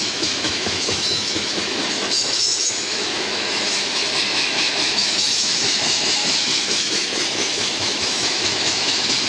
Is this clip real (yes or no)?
no